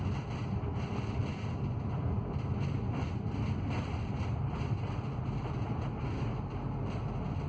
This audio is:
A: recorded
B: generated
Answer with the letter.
A